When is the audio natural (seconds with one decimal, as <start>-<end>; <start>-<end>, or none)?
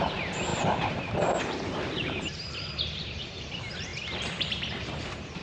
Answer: 3.9-4.8